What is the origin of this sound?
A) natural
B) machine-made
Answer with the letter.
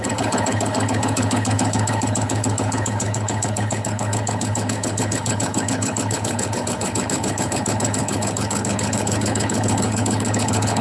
B